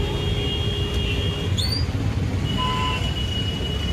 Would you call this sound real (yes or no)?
yes